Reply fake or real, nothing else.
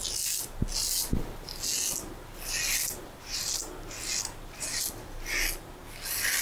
real